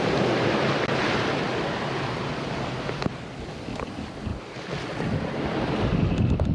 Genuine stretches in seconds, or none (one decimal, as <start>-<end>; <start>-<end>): 0.0-6.5

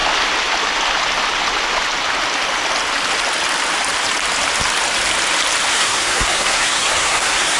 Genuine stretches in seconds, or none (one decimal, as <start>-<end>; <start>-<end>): 0.0-5.7